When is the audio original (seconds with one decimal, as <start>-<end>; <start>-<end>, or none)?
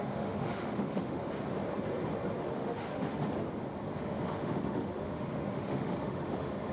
1.2-2.4; 3.2-4.0